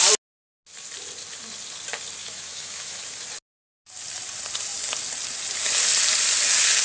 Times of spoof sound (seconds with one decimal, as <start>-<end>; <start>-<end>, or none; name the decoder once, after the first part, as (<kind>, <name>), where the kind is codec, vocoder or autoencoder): 2.2-3.0 (autoencoder, DAC-VAE)